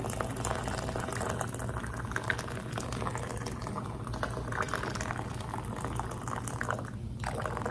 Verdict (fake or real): real